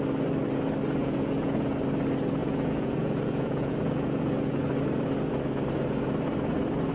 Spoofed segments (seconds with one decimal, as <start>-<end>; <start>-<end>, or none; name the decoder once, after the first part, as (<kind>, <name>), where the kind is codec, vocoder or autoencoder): 1.0-1.7 (vocoder, Vocos); 2.4-4.6